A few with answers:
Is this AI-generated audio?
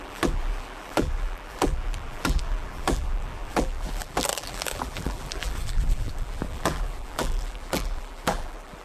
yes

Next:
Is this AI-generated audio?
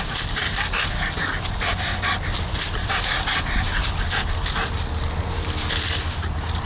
no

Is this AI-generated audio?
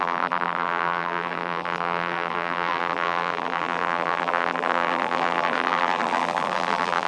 yes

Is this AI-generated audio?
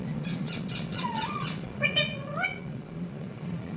yes